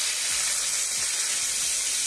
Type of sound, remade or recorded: recorded